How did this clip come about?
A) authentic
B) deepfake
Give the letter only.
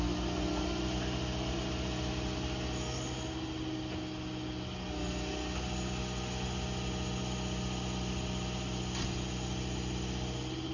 A